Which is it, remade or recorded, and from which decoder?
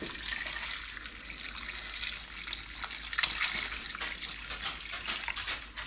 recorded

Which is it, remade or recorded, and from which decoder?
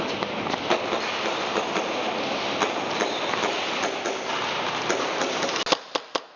recorded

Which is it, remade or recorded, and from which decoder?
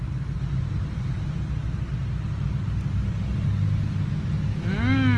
recorded